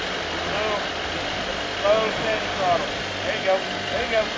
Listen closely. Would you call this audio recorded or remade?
recorded